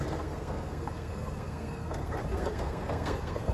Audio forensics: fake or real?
fake